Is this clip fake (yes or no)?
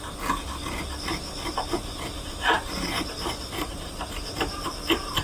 no